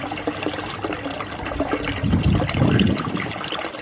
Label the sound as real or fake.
real